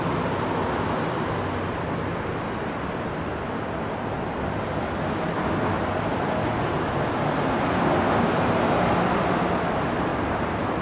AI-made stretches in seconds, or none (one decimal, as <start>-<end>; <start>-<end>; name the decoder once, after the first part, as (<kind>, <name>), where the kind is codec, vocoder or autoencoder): none